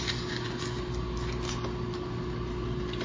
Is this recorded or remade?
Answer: recorded